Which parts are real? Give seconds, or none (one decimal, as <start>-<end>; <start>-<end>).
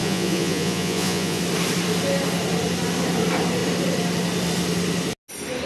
1.4-5.7